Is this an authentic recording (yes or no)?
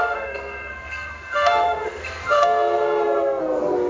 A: no